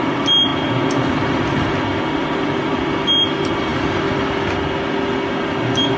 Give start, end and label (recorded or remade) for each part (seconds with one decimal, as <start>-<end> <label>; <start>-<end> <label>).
0.0-6.0 recorded